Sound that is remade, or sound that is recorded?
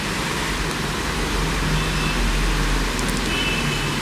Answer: recorded